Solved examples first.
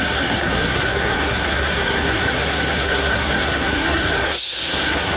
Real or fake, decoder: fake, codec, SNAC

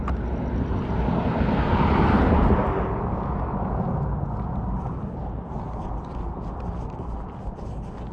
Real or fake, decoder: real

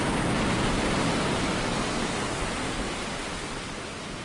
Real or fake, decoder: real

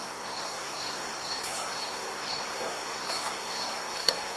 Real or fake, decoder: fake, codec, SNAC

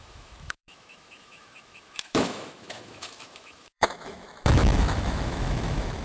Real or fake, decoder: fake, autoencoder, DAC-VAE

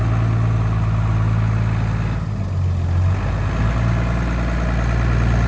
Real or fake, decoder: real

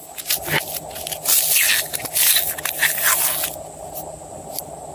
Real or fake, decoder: real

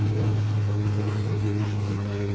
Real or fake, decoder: fake, codec, SNAC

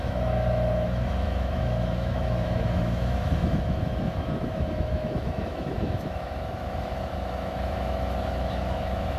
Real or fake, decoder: fake, autoencoder, DAC-VAE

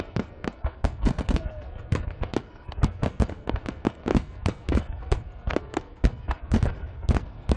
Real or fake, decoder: fake, codec, SNAC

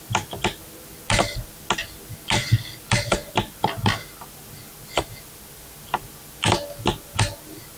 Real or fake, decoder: real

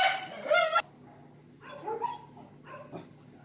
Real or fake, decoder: real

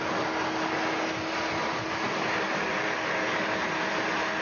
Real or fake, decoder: real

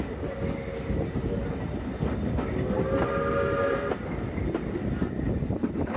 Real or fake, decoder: real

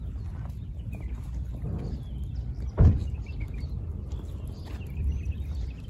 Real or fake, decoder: real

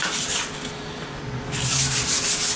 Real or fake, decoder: real